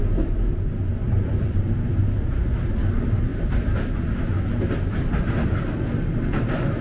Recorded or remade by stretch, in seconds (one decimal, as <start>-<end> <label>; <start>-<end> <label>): 0.0-0.9 recorded; 0.9-1.6 remade; 1.6-3.3 recorded; 3.3-4.0 remade; 4.0-6.8 recorded